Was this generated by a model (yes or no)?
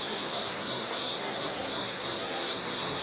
yes